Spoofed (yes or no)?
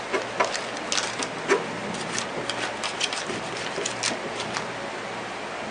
no